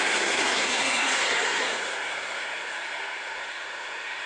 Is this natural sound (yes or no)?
no